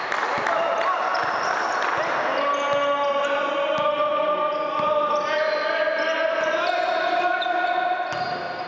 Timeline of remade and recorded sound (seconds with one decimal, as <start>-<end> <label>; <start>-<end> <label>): 0.0-8.7 recorded